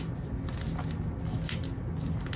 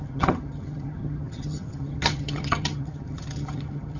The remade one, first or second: second